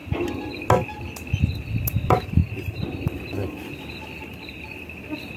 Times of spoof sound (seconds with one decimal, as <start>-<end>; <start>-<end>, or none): 1.7-5.4